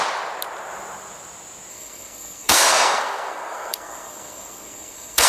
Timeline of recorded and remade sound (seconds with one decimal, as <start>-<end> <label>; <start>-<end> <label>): 0.0-1.7 recorded; 1.7-5.3 remade